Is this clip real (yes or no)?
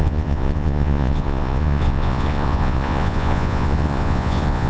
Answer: no